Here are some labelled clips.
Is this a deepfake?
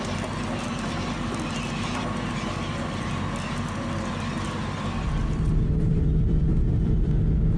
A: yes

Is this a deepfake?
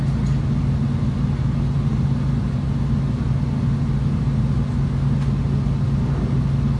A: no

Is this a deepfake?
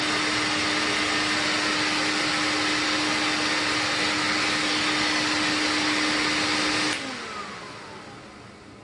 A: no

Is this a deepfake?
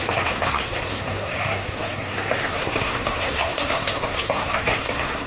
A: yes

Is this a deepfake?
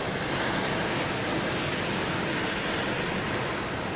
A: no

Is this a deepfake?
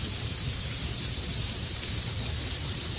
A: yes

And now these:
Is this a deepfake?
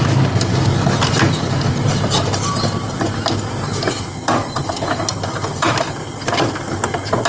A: no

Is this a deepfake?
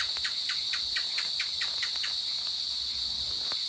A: no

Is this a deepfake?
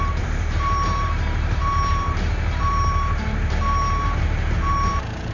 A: yes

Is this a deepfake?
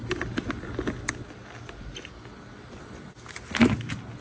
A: no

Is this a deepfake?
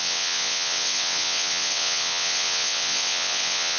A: yes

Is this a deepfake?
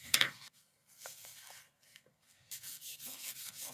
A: yes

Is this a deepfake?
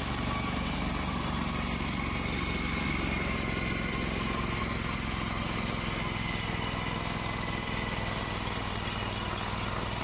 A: no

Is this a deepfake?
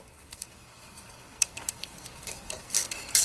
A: yes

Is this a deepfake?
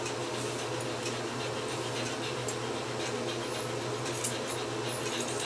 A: no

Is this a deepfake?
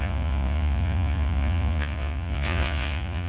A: yes